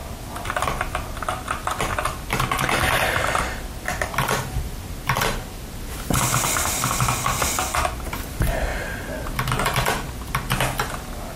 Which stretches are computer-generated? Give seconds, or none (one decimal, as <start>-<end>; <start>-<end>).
none